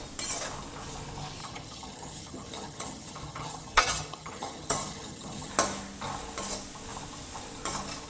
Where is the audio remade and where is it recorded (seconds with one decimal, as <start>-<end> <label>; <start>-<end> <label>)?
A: 0.0-1.4 recorded; 1.4-5.5 remade; 5.5-8.1 recorded